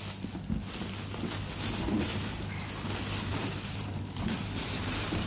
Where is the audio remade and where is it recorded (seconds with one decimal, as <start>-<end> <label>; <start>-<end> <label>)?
0.0-2.1 recorded; 2.1-2.7 remade; 2.7-3.3 recorded; 3.3-5.3 remade